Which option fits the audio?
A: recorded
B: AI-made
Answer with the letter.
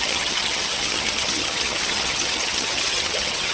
B